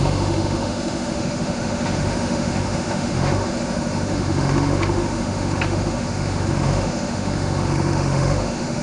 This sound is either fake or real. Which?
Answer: fake